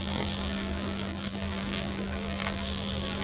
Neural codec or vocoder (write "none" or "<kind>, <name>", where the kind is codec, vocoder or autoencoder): vocoder, BigVGAN v2